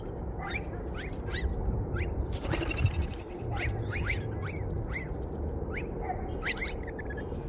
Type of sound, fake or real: real